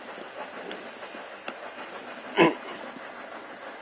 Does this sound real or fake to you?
real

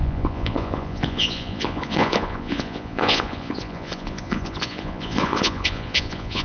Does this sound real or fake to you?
fake